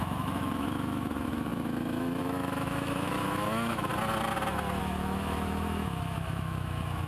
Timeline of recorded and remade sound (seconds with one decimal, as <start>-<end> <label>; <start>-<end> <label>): 0.0-3.9 remade; 3.9-4.8 recorded; 4.8-7.1 remade